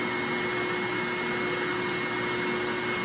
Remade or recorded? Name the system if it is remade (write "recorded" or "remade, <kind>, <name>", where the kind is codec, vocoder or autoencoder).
recorded